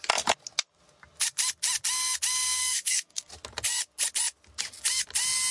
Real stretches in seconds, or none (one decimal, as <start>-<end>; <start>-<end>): 0.0-2.6; 3.3-5.5